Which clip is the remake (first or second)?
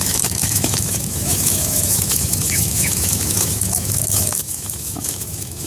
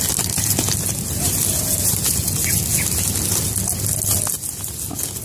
first